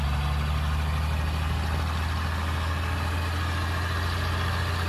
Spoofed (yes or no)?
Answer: no